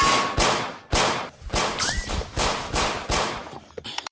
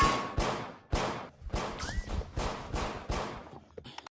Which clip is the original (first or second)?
second